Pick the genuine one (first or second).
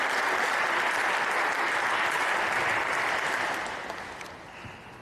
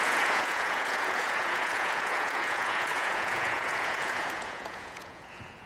first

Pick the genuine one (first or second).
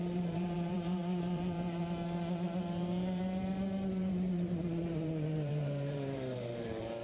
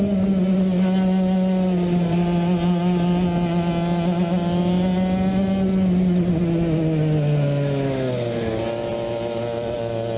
second